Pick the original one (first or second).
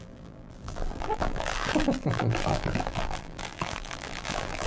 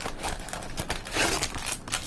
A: second